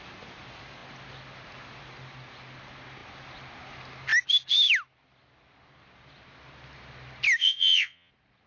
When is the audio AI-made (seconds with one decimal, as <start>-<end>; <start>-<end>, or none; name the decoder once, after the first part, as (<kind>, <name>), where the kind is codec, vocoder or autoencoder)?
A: 7.4-8.1 (vocoder, WaveNeXt)